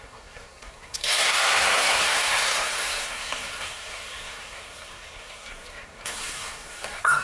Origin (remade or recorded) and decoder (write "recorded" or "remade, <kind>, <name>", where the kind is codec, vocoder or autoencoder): remade, codec, SNAC